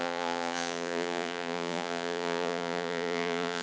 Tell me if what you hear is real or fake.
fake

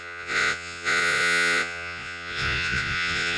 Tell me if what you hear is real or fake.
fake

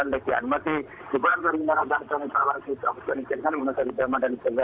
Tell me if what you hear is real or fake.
fake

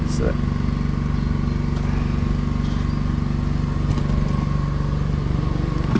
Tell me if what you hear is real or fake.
real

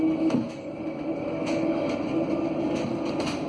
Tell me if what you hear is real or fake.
real